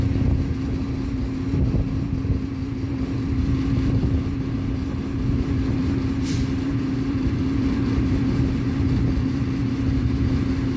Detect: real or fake real